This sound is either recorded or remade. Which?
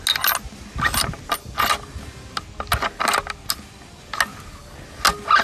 recorded